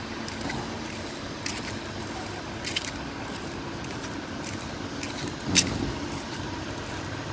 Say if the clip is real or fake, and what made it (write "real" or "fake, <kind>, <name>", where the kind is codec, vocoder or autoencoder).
real